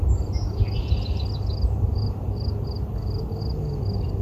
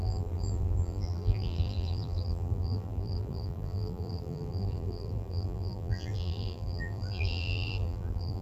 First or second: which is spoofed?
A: second